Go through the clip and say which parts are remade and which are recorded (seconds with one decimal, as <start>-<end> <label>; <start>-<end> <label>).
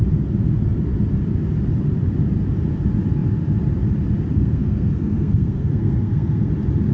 0.0-4.3 recorded; 4.3-6.5 remade; 6.5-6.9 recorded